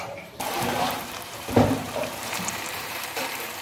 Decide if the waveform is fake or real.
fake